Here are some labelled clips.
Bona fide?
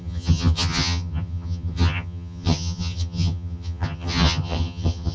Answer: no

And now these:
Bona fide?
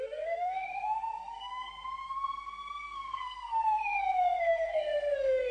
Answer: no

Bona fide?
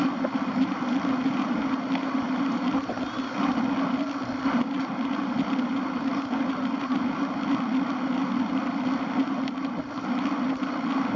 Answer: yes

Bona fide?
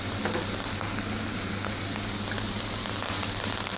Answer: yes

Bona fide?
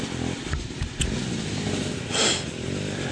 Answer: yes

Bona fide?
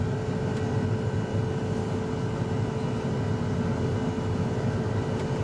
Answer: yes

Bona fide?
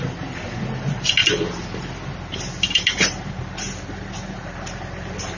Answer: yes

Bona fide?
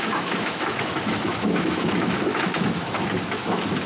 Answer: no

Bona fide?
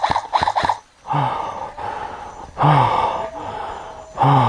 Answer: yes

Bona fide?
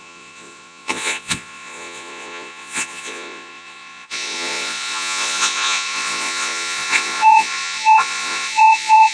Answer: no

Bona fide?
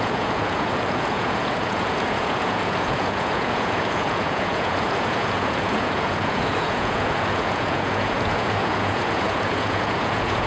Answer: no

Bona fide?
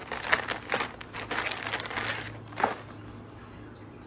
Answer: yes